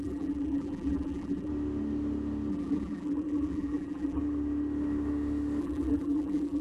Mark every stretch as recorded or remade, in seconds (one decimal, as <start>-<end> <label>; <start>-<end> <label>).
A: 0.0-1.5 remade; 1.5-2.5 recorded; 2.5-4.2 remade; 4.2-5.6 recorded; 5.6-6.6 remade